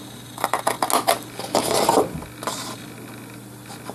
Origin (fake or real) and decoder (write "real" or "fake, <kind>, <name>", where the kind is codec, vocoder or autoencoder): real